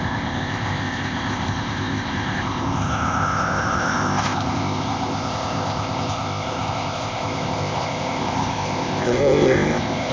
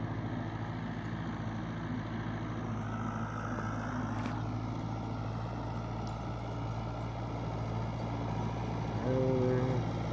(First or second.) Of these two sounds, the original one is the second